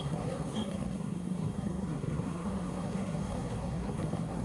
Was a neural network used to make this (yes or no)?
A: yes